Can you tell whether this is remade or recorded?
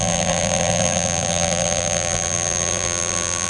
remade